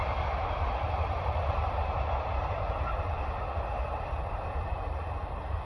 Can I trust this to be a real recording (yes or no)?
no